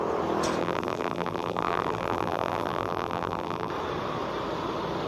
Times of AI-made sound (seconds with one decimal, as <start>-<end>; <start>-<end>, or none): 0.6-3.7